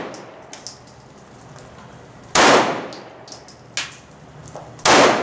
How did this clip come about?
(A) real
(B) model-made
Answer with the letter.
A